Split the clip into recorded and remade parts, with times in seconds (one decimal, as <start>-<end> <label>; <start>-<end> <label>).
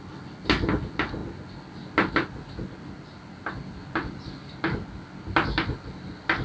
0.0-6.4 recorded